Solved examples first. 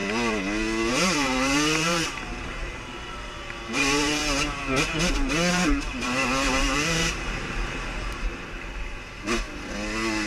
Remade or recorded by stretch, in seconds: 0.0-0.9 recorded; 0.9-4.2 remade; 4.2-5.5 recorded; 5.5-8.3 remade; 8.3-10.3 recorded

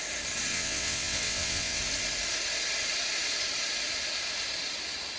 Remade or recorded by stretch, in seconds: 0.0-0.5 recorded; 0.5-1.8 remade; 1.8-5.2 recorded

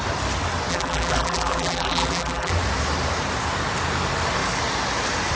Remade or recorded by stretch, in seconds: 0.0-0.7 recorded; 0.7-2.5 remade; 2.5-5.3 recorded